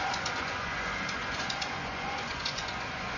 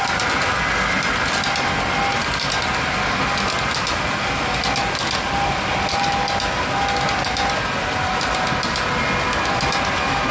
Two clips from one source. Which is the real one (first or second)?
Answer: second